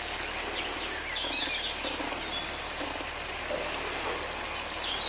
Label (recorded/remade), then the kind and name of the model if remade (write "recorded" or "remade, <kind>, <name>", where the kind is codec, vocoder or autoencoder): recorded